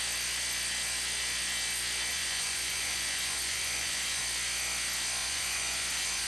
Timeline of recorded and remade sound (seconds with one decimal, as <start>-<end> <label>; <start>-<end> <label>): 0.0-2.1 recorded; 2.1-4.2 remade; 4.2-5.2 recorded; 5.2-6.3 remade